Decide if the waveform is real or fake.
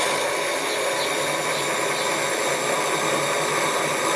real